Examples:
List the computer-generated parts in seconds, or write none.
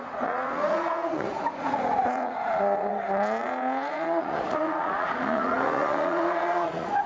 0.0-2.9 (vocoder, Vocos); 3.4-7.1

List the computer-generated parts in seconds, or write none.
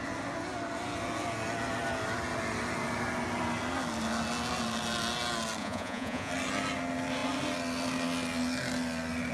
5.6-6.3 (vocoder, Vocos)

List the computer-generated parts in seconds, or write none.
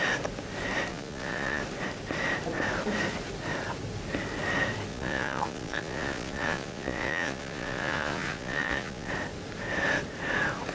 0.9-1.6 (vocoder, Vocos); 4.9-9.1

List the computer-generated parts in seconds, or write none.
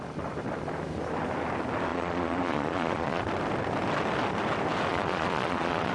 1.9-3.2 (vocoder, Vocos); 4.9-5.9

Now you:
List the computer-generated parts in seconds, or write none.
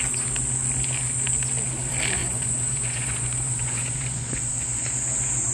2.2-4.9 (vocoder, Vocos)